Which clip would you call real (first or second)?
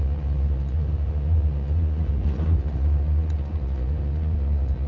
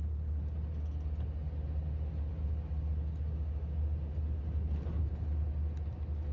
second